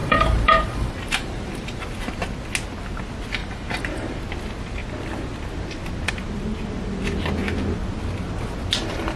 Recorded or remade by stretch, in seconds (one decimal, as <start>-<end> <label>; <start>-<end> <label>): 0.0-1.8 remade; 1.8-3.4 recorded; 3.4-4.2 remade; 4.2-9.2 recorded